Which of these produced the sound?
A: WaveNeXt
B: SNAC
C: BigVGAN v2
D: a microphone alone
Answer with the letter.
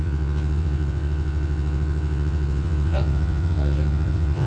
A